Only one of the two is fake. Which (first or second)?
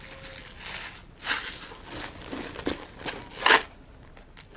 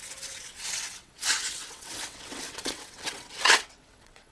second